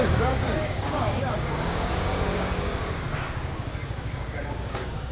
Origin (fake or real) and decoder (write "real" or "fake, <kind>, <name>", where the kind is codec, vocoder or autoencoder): fake, codec, DAC